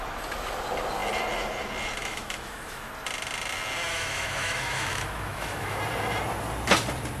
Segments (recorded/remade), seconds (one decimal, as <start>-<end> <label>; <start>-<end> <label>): 0.0-2.0 recorded; 2.0-2.9 remade; 2.9-3.9 recorded; 3.9-5.8 remade; 5.8-7.2 recorded